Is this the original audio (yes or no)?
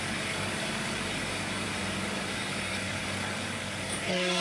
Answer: no